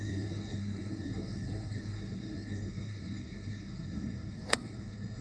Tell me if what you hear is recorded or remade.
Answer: remade